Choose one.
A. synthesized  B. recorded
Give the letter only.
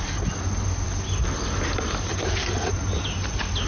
B